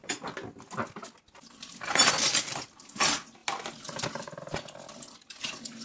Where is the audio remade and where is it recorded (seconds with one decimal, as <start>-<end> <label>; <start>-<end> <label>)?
0.0-5.8 recorded